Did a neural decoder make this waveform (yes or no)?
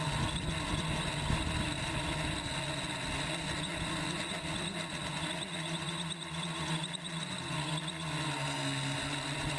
no